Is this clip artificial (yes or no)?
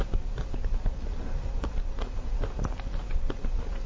no